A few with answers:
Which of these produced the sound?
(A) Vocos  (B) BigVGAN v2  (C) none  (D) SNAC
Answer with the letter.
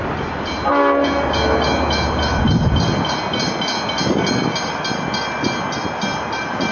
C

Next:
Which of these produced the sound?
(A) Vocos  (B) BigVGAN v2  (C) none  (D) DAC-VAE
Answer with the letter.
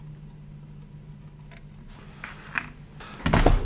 C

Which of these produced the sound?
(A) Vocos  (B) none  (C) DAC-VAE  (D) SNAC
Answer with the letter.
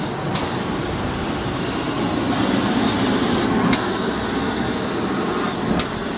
B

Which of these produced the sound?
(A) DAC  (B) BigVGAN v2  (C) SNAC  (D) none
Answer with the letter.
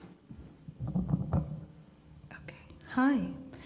A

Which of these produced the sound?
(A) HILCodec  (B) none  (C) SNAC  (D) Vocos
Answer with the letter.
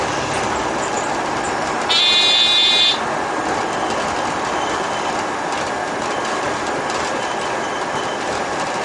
B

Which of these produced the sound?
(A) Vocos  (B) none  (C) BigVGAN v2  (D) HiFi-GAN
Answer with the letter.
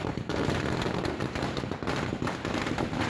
C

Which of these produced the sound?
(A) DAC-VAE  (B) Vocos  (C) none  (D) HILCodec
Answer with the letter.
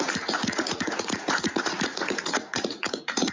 B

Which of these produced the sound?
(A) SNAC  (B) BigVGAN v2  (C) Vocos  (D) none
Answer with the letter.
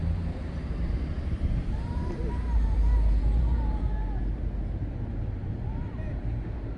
B